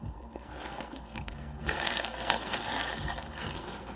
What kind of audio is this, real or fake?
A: fake